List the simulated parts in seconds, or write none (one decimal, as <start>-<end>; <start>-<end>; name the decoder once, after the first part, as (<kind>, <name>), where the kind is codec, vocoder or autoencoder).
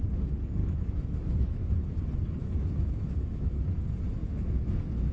0.6-1.7 (autoencoder, DAC-VAE); 2.4-3.5; 4.2-5.1